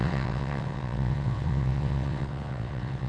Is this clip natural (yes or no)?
no